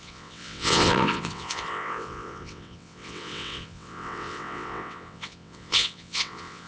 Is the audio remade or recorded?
remade